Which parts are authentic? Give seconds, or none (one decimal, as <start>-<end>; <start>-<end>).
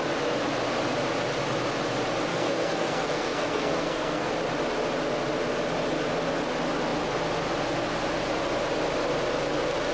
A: 0.0-2.3; 4.3-9.9